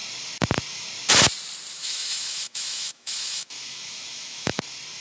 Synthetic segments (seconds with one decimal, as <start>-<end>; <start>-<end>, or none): 1.7-4.6